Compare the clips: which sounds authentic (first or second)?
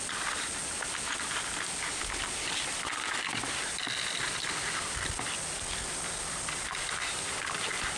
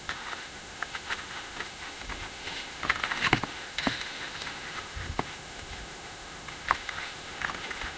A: first